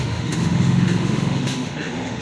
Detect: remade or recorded remade